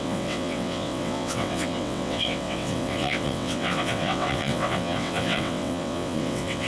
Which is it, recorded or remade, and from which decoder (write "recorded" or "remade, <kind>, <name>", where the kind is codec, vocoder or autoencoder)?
remade, vocoder, WaveNeXt